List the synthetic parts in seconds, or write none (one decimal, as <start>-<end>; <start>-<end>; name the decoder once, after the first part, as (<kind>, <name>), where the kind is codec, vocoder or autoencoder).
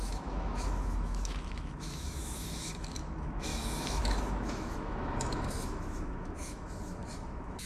0.0-7.7 (autoencoder, DAC-VAE)